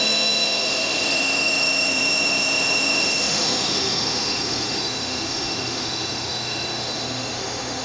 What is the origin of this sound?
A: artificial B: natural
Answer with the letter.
A